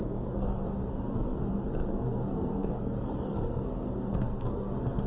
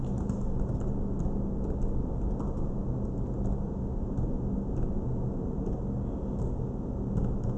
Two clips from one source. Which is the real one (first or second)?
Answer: second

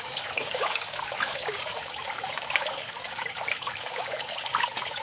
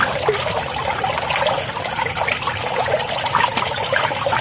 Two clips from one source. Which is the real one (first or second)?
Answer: second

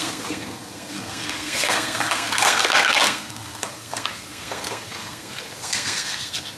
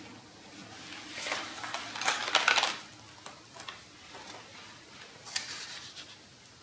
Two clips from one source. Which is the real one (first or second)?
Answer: second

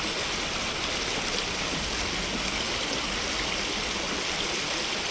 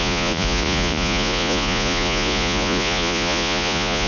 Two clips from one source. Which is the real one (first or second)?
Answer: first